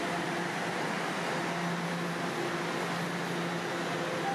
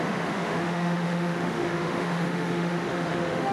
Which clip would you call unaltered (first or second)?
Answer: first